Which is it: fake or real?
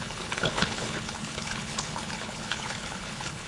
fake